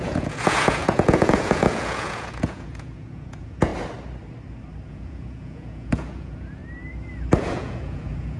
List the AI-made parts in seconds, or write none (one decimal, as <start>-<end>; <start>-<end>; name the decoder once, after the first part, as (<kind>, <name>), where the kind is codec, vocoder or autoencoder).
0.0-3.7 (vocoder, Vocos); 4.9-6.6; 7.4-8.4